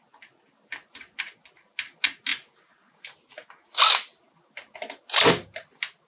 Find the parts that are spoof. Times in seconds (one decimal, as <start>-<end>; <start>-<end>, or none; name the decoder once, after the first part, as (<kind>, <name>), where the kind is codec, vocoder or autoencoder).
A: none